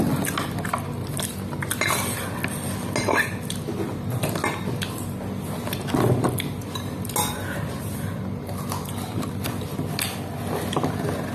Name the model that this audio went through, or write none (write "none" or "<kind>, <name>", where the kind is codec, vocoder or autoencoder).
none